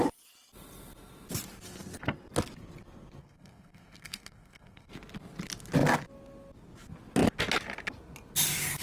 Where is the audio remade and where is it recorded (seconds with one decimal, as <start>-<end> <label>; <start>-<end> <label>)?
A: 0.0-3.2 recorded; 3.2-4.9 remade; 4.9-8.8 recorded